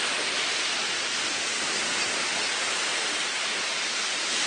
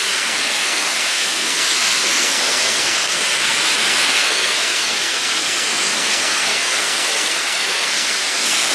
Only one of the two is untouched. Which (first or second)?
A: first